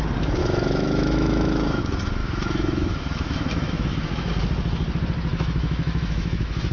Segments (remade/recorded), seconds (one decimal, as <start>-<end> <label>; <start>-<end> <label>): 0.0-0.4 recorded; 0.4-1.8 remade; 1.8-2.2 recorded; 2.2-4.3 remade; 4.3-5.3 recorded; 5.3-6.7 remade